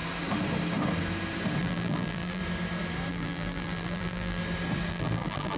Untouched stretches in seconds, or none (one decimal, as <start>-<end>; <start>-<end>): 0.0-1.6; 2.4-3.1; 4.4-4.9